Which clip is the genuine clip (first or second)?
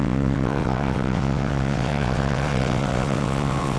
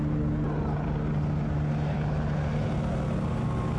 second